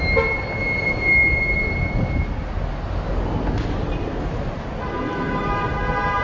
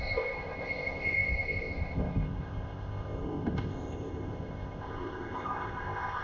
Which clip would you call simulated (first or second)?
second